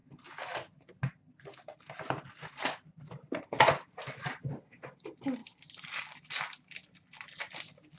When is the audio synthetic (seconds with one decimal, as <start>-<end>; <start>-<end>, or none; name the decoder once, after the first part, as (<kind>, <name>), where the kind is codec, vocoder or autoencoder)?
none